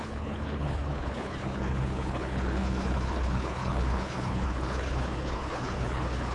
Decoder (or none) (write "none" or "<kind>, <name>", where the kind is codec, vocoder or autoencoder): codec, HILCodec